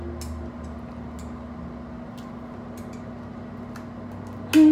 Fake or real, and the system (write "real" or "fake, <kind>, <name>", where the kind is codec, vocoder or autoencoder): real